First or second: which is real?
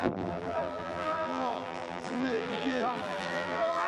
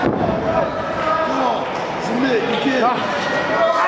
second